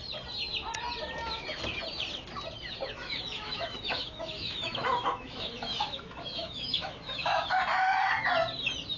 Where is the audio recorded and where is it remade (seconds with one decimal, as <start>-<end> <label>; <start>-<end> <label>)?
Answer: 0.0-3.0 recorded; 3.0-7.5 remade; 7.5-9.0 recorded